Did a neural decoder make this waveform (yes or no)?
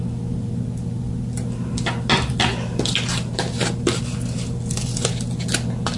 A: no